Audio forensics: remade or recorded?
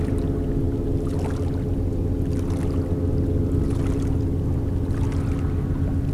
recorded